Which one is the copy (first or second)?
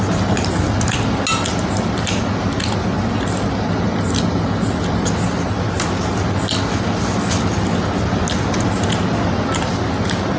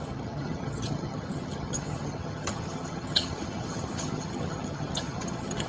second